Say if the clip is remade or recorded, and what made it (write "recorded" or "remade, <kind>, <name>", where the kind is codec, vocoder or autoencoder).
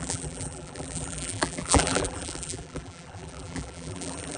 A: remade, vocoder, BigVGAN v2